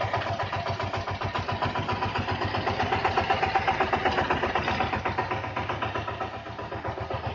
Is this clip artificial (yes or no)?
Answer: no